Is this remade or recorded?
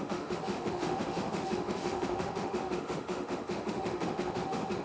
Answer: remade